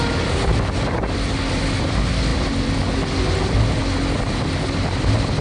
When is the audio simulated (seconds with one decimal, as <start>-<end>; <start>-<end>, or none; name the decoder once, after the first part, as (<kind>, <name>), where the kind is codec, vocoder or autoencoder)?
none